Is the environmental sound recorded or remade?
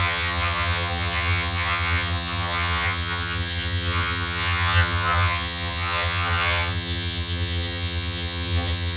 remade